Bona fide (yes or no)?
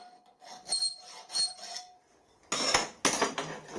yes